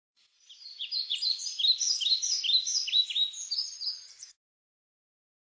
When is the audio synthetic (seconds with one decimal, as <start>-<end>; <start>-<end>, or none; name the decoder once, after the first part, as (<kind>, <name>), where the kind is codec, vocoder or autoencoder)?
0.0-1.4 (vocoder, BigVGAN v2); 4.0-5.4